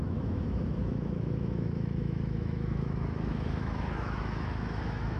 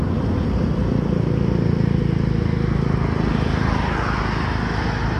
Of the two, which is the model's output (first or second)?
first